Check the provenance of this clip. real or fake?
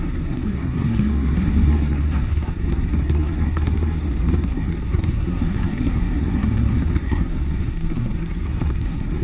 fake